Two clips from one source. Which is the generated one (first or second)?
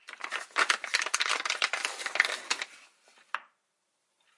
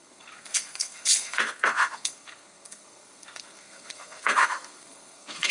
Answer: second